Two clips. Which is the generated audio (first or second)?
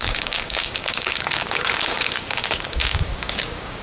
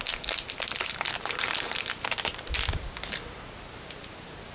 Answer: first